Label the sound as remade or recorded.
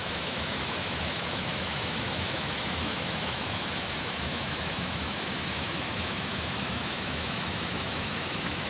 remade